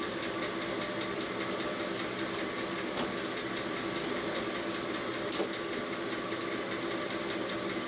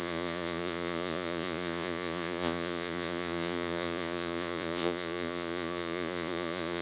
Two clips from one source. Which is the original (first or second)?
first